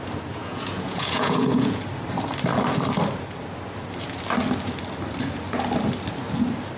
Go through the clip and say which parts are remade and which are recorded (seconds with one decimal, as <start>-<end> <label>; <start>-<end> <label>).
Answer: 0.0-0.4 recorded; 0.4-1.8 remade; 1.8-6.8 recorded